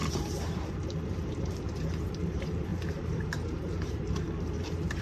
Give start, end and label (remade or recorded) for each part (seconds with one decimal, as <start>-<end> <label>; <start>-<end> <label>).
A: 0.0-5.0 remade